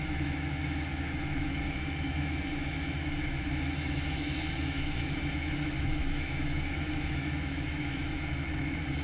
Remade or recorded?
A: remade